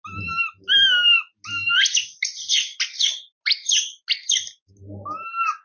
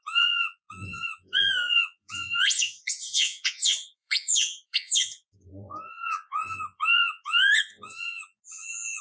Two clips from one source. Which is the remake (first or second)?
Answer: second